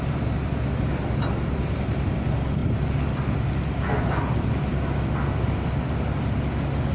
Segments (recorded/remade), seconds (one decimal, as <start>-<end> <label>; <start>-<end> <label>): 0.0-6.9 recorded